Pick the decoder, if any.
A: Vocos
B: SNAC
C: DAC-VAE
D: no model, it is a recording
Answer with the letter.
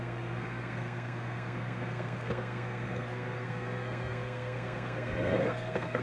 B